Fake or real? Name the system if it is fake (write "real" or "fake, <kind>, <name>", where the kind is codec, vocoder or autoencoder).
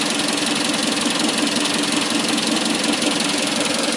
real